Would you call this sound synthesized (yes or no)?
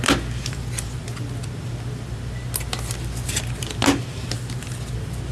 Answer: no